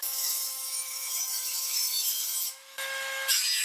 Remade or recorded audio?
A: remade